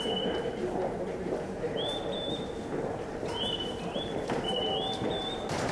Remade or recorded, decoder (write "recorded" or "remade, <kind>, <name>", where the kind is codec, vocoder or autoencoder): remade, vocoder, BigVGAN v2